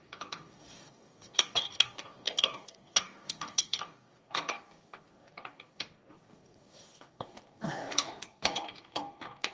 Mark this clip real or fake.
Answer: fake